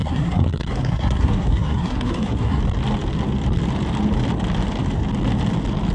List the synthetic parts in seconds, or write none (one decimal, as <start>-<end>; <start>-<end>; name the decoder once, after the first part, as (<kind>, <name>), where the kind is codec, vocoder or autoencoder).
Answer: 0.0-2.6 (codec, SNAC)